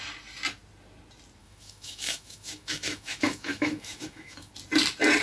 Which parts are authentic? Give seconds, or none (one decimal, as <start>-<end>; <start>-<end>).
0.0-1.4; 4.5-5.2